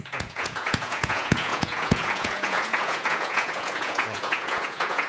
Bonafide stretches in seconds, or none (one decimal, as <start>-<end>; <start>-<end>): none